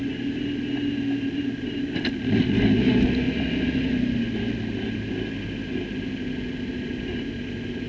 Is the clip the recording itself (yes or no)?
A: yes